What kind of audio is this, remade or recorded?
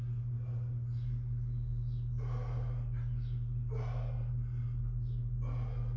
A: recorded